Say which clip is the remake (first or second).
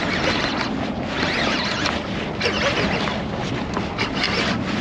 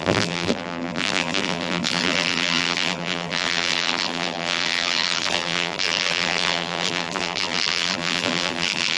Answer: second